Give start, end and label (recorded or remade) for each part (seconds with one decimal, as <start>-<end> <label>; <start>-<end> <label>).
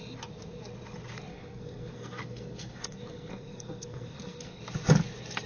0.0-1.3 recorded; 1.3-4.6 remade; 4.6-5.5 recorded